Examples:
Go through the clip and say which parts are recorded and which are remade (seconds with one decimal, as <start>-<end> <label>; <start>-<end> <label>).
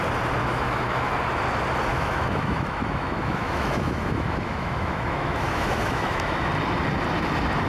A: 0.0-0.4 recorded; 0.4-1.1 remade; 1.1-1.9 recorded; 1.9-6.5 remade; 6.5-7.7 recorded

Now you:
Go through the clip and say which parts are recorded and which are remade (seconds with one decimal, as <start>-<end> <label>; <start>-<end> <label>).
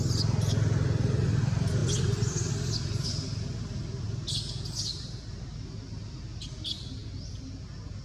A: 0.0-8.0 recorded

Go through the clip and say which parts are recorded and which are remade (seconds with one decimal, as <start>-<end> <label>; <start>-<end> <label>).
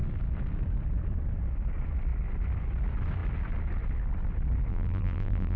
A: 0.0-4.7 recorded; 4.7-5.6 remade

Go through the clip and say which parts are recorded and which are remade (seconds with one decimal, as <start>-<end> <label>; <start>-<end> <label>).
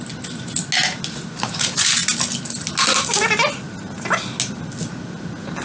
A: 0.0-5.6 recorded